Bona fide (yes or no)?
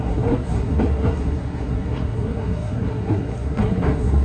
no